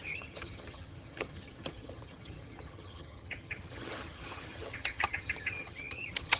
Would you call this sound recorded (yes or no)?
no